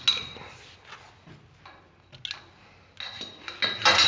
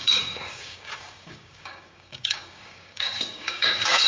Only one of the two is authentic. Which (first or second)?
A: first